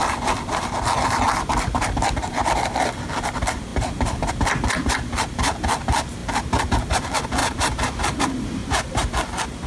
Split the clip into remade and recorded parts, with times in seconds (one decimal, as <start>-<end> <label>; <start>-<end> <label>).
0.0-7.4 recorded; 7.4-8.2 remade; 8.2-8.6 recorded; 8.6-9.1 remade; 9.1-9.7 recorded